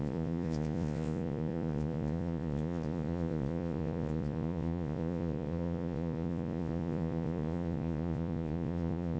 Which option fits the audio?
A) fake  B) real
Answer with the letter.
A